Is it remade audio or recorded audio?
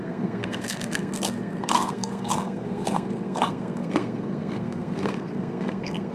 remade